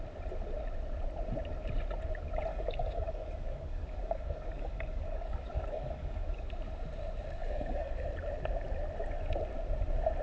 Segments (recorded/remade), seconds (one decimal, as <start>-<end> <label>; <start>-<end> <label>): 0.0-2.5 recorded; 2.5-6.5 remade; 6.5-7.4 recorded; 7.4-7.9 remade; 7.9-10.2 recorded